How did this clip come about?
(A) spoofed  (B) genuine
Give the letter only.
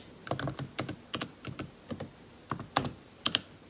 B